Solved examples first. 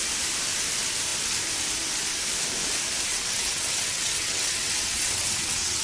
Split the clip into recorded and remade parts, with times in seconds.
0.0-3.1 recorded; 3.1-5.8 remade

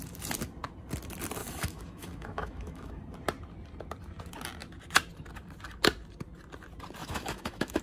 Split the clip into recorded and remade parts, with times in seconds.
0.0-1.4 recorded; 1.4-3.0 remade; 3.0-7.0 recorded; 7.0-7.8 remade